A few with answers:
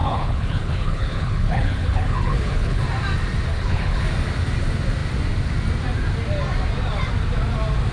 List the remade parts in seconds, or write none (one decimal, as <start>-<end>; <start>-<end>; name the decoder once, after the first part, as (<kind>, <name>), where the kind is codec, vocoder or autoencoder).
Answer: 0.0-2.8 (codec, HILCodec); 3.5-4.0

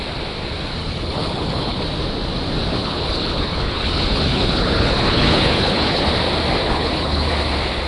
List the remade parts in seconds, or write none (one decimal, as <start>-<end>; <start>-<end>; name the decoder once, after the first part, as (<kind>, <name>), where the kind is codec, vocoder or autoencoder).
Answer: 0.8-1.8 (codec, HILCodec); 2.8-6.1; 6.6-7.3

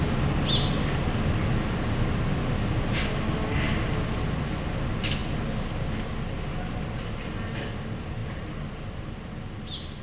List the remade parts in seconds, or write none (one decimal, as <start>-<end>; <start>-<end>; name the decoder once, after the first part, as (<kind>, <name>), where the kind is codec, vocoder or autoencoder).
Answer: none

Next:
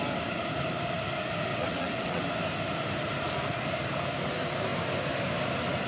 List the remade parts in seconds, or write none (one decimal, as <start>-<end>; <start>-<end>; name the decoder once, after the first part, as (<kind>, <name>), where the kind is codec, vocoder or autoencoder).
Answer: 1.5-2.2 (vocoder, WaveNeXt)

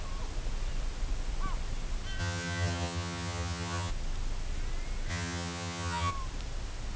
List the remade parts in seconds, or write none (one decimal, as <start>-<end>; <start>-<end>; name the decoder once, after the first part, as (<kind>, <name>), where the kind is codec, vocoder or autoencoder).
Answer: 2.2-3.9 (vocoder, HiFi-GAN); 5.1-6.1